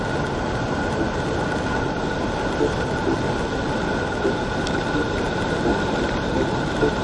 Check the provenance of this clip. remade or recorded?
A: recorded